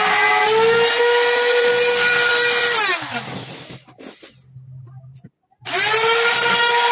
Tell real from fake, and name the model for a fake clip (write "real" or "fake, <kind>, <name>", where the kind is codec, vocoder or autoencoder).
real